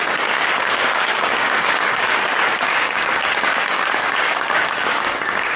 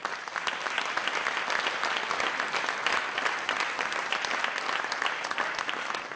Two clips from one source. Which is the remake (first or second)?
first